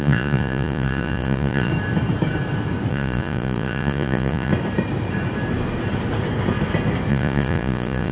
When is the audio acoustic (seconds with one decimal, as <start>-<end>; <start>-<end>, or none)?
1.7-2.9; 4.5-7.1